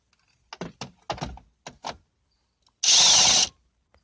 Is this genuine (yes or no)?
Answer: yes